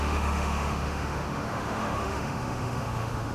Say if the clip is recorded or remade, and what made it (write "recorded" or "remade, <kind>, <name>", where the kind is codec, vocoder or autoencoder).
remade, autoencoder, DAC-VAE